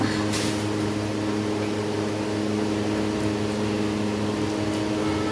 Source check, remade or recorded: recorded